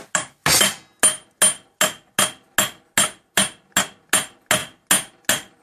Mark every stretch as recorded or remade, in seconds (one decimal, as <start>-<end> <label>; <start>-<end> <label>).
0.0-5.6 recorded